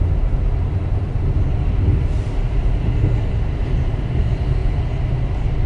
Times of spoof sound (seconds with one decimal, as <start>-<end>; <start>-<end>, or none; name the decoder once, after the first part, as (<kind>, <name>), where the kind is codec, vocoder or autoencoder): none